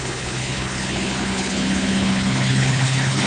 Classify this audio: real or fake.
fake